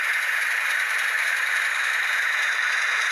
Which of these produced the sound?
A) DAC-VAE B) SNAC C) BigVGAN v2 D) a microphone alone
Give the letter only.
C